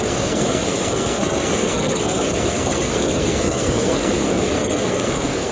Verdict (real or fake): fake